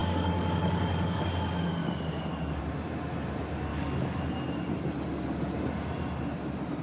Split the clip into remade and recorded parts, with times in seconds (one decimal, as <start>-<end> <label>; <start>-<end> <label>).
0.0-1.2 remade; 1.2-1.8 recorded; 1.8-2.6 remade; 2.6-3.7 recorded; 3.7-4.2 remade; 4.2-6.8 recorded